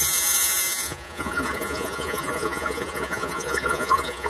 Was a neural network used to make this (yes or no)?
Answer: yes